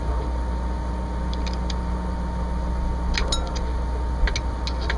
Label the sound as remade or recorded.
recorded